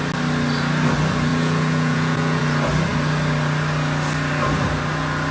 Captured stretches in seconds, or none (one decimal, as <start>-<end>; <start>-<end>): 0.0-1.3; 2.4-5.3